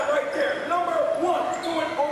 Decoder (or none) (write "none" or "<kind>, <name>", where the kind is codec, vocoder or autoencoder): none